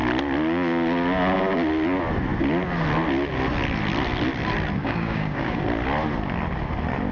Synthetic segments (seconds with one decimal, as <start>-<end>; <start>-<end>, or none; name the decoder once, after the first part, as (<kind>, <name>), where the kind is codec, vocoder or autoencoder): 4.8-5.6 (codec, DAC)